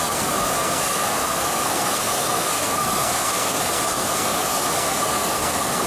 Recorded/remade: remade